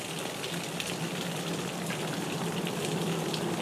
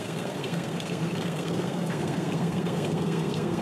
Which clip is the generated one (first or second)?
second